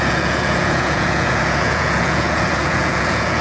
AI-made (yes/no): yes